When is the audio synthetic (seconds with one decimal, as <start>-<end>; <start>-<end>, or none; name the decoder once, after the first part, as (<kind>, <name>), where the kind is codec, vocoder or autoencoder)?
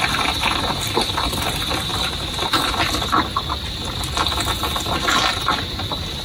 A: none